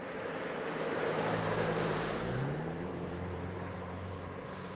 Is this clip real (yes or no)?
no